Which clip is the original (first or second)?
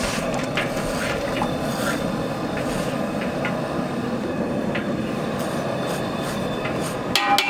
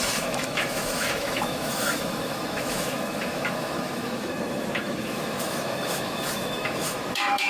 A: first